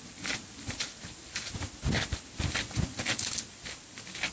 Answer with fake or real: real